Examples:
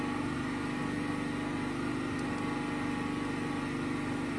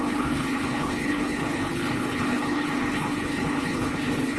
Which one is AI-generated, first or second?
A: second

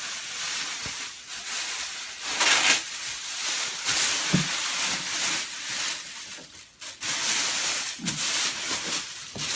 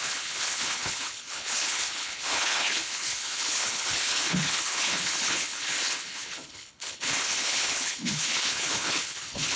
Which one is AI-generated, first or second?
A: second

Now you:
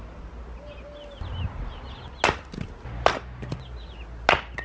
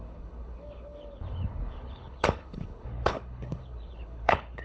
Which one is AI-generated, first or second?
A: second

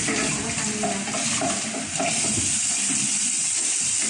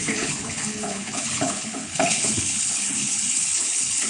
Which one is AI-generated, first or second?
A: second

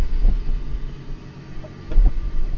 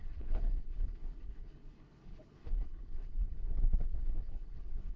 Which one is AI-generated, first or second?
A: second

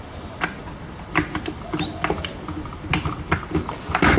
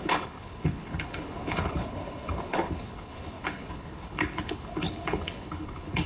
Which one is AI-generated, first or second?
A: second